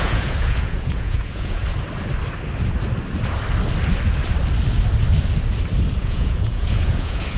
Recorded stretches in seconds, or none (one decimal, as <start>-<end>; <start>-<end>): 1.6-6.0